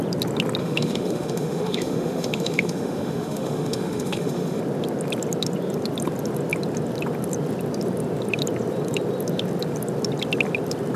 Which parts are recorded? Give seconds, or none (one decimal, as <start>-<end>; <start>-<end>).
0.0-0.6; 4.6-11.0